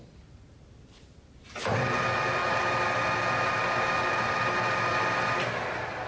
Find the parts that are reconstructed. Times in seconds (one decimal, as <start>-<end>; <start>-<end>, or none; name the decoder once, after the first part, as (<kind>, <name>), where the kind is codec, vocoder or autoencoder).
none

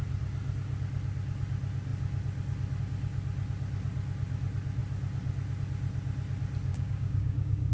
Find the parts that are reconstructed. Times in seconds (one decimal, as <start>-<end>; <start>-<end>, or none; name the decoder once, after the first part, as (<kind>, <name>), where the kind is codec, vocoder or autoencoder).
6.7-7.7 (codec, DAC)

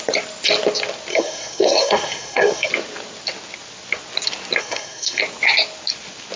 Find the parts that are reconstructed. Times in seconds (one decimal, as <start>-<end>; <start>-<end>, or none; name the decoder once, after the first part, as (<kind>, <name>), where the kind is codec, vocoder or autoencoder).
1.1-2.7 (codec, SNAC); 4.6-5.2

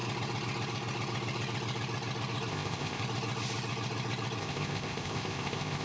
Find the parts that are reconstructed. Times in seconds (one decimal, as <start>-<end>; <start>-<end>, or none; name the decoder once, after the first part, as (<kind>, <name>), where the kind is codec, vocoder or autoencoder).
2.5-3.0 (codec, ZipCodec); 4.4-5.8